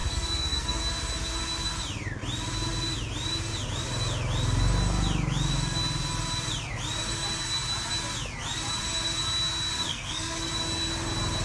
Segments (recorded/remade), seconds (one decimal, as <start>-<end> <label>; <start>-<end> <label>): 0.0-0.8 remade; 0.8-9.9 recorded; 9.9-10.5 remade; 10.5-11.4 recorded